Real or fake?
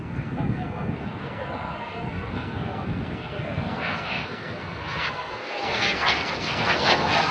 fake